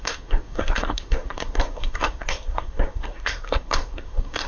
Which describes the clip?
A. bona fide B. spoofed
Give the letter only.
B